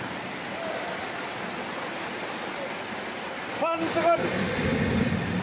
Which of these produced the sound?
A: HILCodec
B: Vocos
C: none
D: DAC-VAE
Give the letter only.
C